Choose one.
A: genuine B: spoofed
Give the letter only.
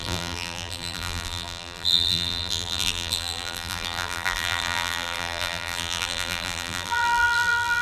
B